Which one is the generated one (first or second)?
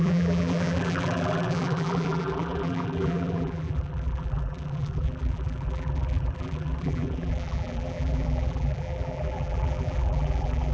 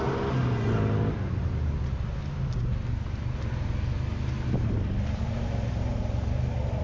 first